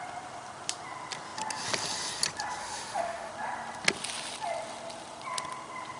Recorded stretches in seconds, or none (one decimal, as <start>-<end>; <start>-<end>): 0.0-2.6; 3.3-6.0